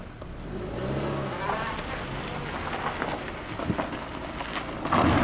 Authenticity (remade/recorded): recorded